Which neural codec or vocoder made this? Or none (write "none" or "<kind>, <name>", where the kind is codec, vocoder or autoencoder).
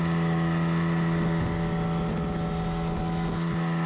none